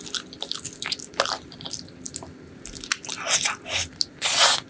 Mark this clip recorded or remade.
recorded